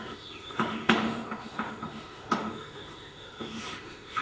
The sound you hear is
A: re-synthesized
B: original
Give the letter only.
A